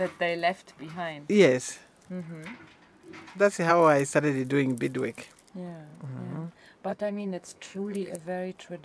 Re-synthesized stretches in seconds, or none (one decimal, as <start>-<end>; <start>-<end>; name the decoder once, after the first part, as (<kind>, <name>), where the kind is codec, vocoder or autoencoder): 6.9-8.2 (codec, SNAC)